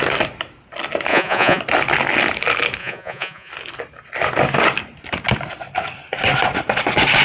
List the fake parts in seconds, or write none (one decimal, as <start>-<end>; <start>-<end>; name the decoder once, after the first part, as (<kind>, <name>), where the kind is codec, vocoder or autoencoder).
1.1-1.6 (vocoder, Vocos); 2.8-3.5